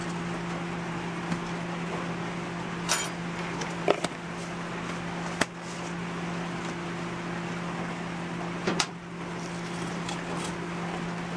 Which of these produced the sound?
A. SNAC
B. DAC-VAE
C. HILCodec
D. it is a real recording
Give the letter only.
D